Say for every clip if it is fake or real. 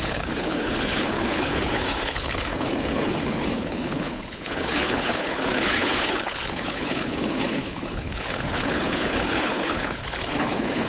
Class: fake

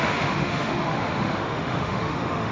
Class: fake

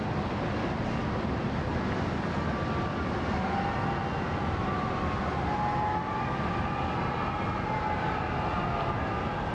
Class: real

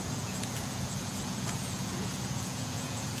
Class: fake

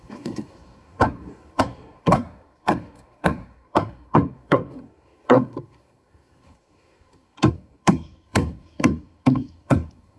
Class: fake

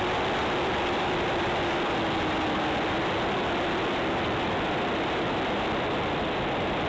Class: real